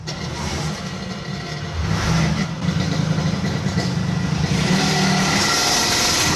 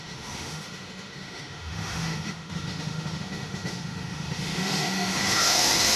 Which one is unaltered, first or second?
first